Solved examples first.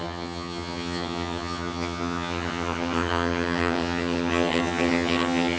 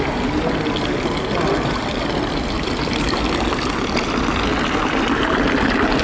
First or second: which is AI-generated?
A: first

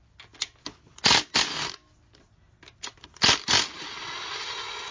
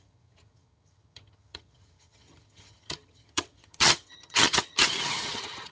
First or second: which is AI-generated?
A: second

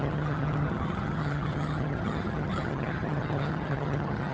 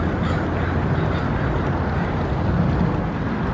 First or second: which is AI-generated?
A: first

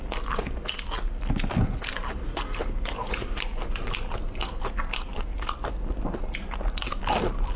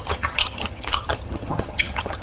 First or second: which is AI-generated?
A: second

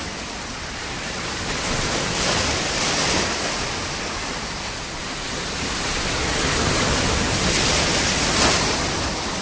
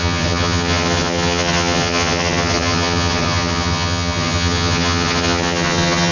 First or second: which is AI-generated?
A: second